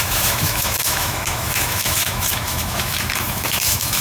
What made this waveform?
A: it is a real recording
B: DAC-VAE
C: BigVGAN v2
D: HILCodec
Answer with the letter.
B